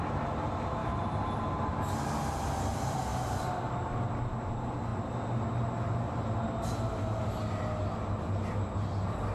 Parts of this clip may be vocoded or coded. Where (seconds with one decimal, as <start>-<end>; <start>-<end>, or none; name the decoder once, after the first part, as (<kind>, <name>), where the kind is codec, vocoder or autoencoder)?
0.8-1.4 (vocoder, BigVGAN v2)